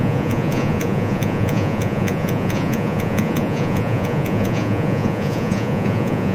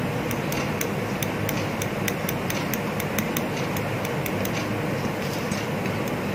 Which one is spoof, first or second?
first